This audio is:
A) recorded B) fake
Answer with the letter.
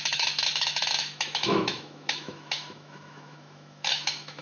B